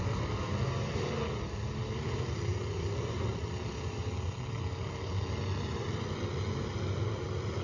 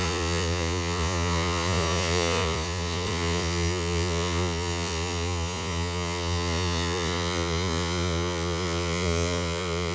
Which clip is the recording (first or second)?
first